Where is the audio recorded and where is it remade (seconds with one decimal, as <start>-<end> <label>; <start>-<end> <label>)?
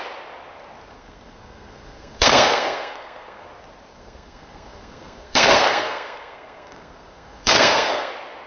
0.0-0.9 recorded; 0.9-3.5 remade; 3.5-3.9 recorded; 3.9-8.1 remade; 8.1-8.5 recorded